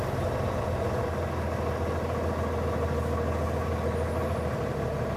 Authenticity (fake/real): real